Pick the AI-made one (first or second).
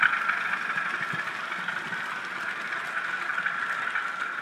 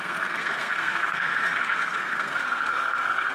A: second